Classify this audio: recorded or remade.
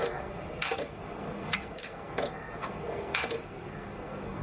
remade